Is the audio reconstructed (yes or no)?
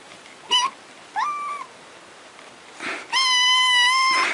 no